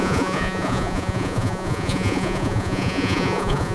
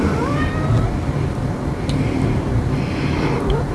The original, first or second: second